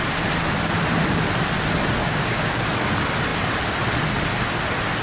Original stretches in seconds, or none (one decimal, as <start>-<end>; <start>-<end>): 0.0-2.0; 2.6-5.0